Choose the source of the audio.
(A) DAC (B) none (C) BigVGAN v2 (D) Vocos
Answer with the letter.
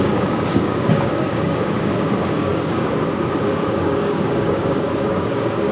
A